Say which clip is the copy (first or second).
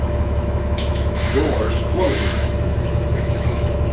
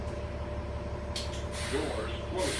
first